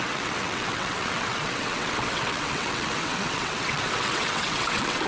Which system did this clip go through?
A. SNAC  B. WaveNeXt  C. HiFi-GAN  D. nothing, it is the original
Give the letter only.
B